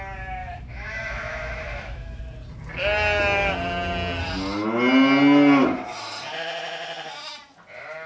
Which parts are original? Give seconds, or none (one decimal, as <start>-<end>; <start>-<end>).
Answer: 0.0-0.4; 2.2-8.1